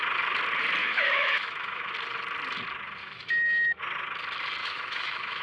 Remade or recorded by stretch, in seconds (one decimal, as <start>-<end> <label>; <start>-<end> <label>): 0.0-0.8 recorded; 0.8-1.9 remade; 1.9-3.0 recorded; 3.0-3.8 remade; 3.8-4.6 recorded; 4.6-5.4 remade